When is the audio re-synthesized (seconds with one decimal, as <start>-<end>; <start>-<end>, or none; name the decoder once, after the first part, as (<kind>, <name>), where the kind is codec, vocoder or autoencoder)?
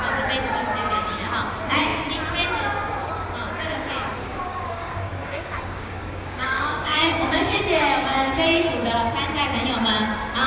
4.2-7.6 (codec, DAC)